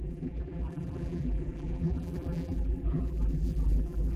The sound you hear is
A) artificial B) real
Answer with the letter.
A